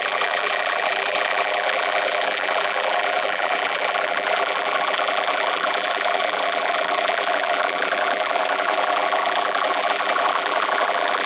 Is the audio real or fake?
fake